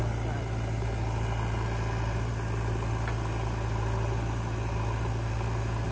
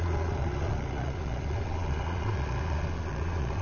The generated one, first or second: second